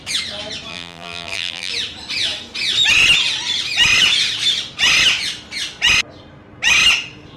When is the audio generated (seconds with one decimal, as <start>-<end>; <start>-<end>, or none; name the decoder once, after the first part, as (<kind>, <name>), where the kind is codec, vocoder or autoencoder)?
0.7-1.7 (vocoder, BigVGAN v2)